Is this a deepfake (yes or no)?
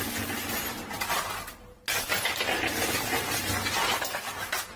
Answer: no